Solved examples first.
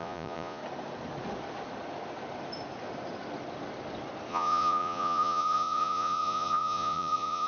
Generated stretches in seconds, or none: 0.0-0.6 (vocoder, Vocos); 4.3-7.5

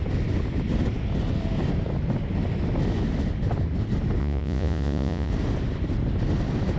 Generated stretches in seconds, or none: 4.2-5.3 (vocoder, Vocos)

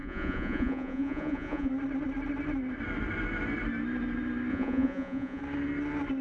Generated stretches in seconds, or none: 0.0-1.7 (vocoder, Vocos); 4.5-5.4

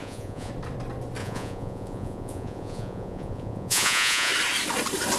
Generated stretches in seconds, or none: 0.0-0.5 (vocoder, Vocos); 1.2-4.3

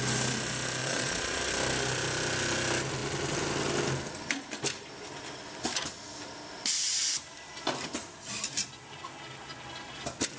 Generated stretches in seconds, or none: 0.8-1.4 (vocoder, Vocos)